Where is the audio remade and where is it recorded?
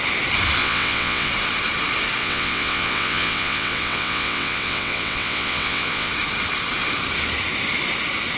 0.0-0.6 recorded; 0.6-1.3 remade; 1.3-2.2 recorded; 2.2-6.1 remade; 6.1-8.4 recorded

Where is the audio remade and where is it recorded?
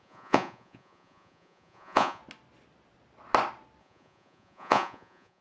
0.0-2.2 remade; 2.2-3.8 recorded; 3.8-5.4 remade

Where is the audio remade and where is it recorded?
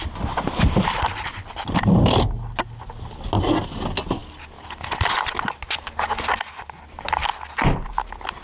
0.0-8.4 recorded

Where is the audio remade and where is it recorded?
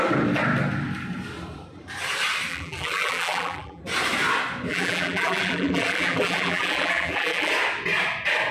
0.0-2.5 recorded; 2.5-3.8 remade; 3.8-4.7 recorded; 4.7-7.5 remade; 7.5-8.5 recorded